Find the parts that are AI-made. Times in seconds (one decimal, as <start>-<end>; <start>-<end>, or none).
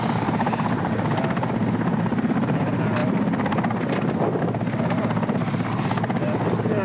none